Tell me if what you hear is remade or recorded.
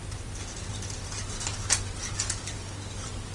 recorded